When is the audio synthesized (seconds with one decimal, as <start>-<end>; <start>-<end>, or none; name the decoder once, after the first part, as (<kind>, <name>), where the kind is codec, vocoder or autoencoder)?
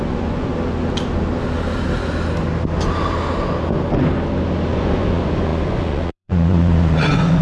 0.0-0.5 (vocoder, Vocos); 4.7-7.4